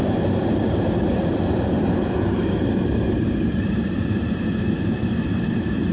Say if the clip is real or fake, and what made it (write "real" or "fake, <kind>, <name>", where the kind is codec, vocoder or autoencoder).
fake, vocoder, BigVGAN v2